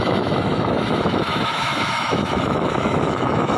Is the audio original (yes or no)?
no